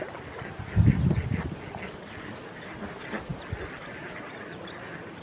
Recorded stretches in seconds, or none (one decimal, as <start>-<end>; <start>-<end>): 0.0-5.2